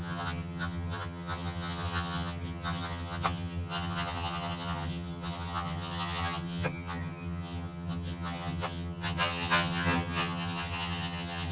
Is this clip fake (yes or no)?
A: yes